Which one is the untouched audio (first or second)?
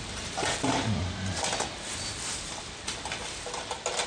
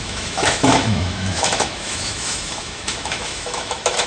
first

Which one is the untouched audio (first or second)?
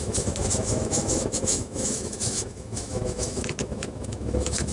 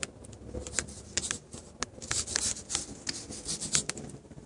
second